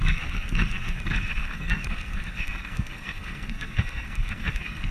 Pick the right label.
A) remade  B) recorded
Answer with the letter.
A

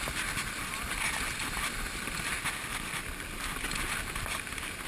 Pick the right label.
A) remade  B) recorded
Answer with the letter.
B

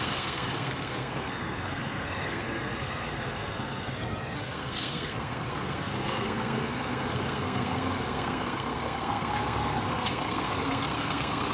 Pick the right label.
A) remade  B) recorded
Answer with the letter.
A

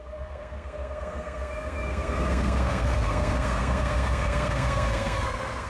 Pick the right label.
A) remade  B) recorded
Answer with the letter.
A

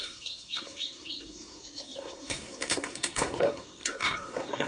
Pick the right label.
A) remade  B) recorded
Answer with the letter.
A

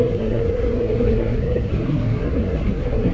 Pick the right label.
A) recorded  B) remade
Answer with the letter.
B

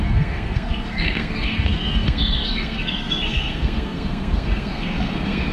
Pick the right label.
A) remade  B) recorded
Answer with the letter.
A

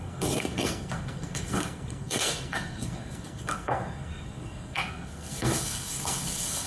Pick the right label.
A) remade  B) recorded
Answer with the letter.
A